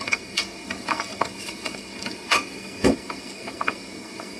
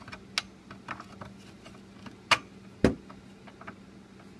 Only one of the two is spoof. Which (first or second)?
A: first